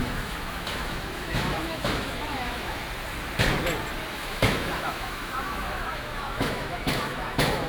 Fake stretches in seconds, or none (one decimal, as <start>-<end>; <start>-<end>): 0.0-2.8; 4.1-7.7